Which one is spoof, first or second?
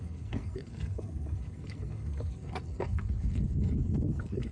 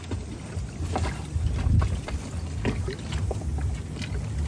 first